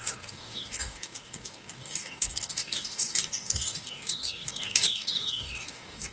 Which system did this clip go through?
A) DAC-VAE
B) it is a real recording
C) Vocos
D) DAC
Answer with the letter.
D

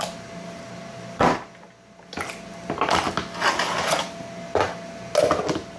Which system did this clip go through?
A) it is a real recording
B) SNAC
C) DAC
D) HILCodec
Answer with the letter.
A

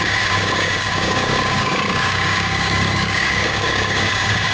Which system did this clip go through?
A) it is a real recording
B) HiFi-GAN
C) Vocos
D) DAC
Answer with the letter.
D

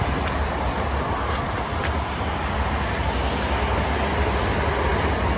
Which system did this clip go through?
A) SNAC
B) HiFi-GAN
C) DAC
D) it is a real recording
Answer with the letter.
D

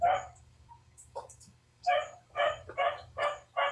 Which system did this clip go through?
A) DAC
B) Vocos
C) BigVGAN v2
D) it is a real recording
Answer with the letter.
A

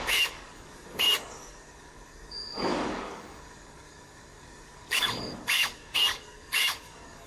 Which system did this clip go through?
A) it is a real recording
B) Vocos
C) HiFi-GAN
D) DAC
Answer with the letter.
D